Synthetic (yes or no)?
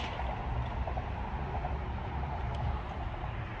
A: no